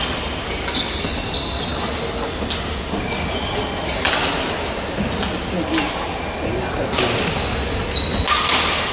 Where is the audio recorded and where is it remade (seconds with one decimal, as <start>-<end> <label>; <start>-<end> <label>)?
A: 0.0-8.9 recorded